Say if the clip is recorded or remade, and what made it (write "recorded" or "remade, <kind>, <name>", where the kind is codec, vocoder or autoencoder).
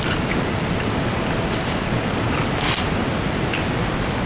recorded